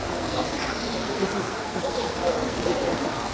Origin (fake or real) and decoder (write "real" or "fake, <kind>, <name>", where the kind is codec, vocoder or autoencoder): fake, codec, SNAC